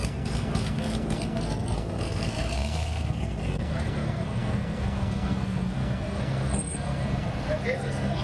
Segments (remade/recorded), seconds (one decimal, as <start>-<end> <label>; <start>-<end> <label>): 0.0-8.2 remade